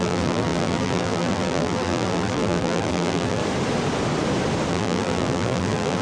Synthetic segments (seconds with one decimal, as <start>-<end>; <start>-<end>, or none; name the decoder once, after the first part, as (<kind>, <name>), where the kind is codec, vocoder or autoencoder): 0.0-3.4 (vocoder, BigVGAN v2); 4.7-6.0

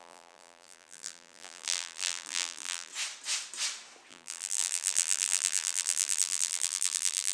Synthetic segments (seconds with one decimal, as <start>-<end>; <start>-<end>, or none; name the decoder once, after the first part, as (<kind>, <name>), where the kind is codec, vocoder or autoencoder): 0.0-2.9 (vocoder, BigVGAN v2); 4.1-7.3

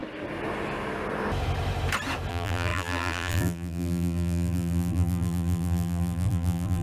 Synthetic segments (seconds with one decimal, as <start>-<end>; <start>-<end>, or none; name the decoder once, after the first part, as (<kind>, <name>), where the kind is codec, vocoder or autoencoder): 2.3-6.8 (vocoder, BigVGAN v2)

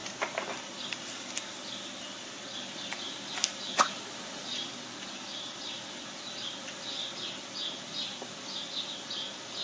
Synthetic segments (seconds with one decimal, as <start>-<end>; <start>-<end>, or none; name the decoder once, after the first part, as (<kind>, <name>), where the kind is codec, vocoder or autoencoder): none

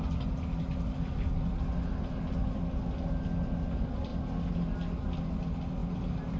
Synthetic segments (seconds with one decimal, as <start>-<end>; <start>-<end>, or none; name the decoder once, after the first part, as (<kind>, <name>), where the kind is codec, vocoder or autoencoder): 5.8-6.4 (vocoder, BigVGAN v2)